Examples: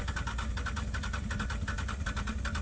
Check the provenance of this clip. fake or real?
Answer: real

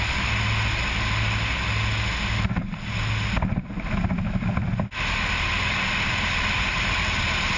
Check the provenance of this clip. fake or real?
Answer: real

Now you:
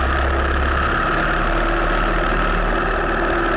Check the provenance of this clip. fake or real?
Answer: real